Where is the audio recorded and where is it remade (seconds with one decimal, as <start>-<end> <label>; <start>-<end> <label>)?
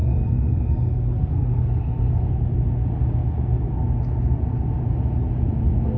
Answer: 0.0-2.3 remade; 2.3-6.0 recorded